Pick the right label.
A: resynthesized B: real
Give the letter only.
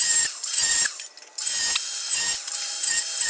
B